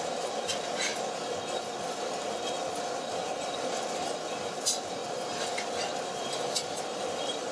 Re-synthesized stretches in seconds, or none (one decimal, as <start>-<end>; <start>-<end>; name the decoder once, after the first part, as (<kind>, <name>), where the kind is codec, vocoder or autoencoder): 0.0-0.9 (vocoder, BigVGAN v2); 4.2-7.5